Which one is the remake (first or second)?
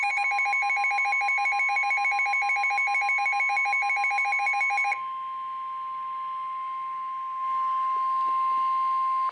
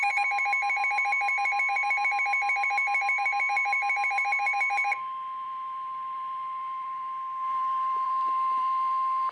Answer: second